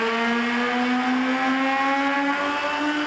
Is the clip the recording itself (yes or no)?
yes